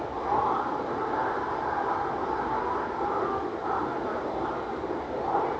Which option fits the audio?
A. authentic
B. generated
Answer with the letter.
B